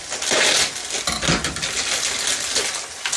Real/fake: real